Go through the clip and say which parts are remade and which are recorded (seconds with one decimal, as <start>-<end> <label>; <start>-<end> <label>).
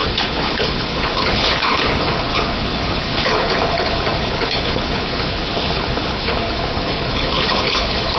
0.0-8.2 remade